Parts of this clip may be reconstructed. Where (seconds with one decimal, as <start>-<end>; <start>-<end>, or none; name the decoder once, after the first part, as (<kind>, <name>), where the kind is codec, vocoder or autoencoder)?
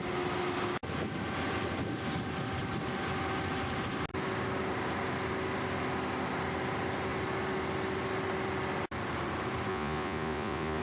9.7-10.8 (vocoder, Vocos)